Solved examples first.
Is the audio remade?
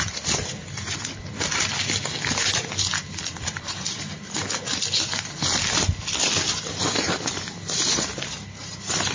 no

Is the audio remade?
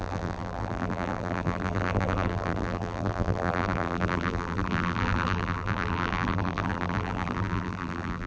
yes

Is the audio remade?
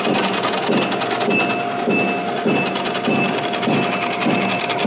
no